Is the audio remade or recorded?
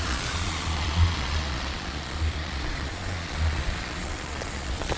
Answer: remade